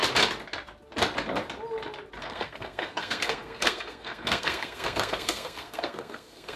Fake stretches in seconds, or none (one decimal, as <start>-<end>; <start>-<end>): 2.2-6.6